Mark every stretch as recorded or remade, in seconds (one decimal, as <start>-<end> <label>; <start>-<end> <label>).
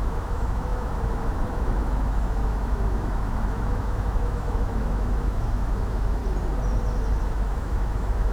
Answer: 0.0-6.2 remade; 6.2-7.2 recorded; 7.2-8.3 remade